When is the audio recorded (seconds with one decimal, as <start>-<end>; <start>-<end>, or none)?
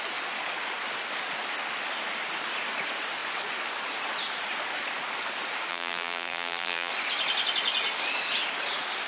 0.0-5.7; 6.9-9.1